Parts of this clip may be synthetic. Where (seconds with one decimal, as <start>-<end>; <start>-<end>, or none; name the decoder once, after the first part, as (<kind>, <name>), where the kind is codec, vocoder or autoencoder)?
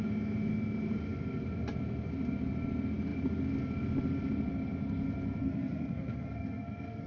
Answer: 5.4-7.1 (codec, SNAC)